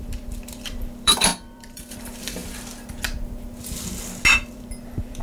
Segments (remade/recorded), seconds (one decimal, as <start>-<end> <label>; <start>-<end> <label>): 0.0-2.4 remade; 2.4-4.5 recorded; 4.5-5.2 remade